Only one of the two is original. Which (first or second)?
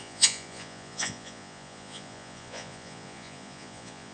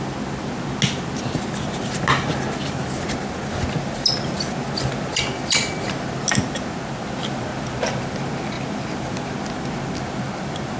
second